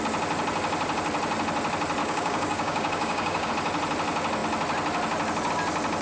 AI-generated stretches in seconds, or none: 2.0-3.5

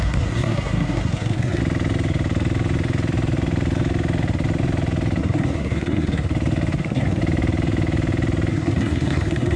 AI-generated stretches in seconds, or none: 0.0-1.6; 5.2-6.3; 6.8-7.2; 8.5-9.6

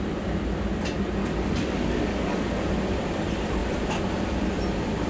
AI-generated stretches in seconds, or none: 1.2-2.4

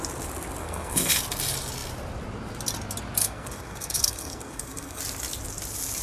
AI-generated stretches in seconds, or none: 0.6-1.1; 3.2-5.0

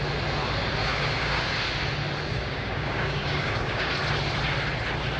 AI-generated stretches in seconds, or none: 0.8-1.5; 2.3-3.9

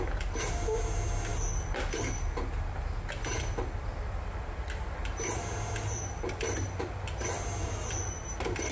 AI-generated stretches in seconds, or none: none

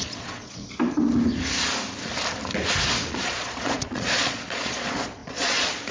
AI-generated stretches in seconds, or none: 0.0-0.6; 3.1-5.9